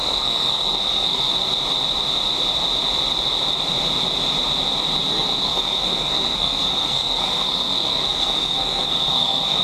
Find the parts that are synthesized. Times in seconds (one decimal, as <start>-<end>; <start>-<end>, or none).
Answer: 0.0-1.3; 5.1-9.6